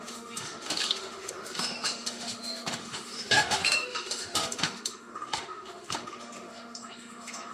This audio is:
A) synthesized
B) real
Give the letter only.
A